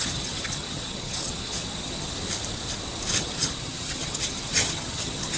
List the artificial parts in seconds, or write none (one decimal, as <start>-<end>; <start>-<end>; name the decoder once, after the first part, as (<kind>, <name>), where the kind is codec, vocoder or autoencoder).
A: 0.0-2.1 (vocoder, HiFi-GAN); 3.2-5.4